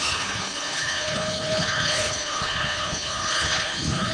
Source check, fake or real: fake